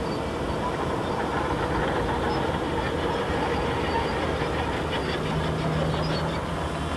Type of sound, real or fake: real